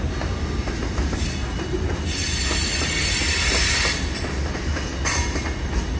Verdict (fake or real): real